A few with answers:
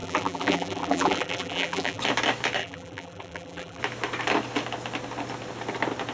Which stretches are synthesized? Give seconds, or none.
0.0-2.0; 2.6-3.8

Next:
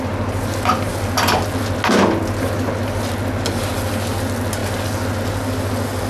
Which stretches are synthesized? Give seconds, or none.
none

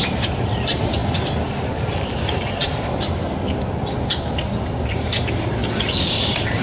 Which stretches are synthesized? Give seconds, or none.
0.0-1.0; 1.7-3.2; 4.0-5.6

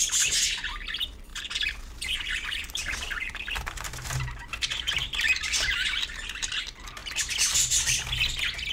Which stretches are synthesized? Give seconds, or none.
1.3-6.5

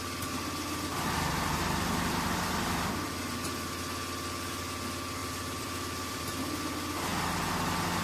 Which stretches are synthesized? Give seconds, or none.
0.9-3.2; 5.2-6.2

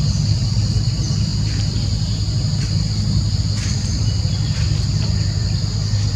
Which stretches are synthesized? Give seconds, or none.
none